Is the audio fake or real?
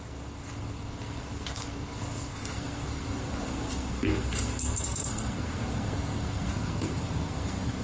fake